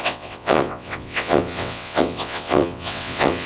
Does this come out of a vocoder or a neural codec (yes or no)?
yes